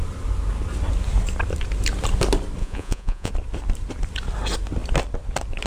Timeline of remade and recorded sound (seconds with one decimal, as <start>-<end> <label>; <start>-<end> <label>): 0.0-2.6 recorded; 2.6-3.3 remade; 3.3-5.7 recorded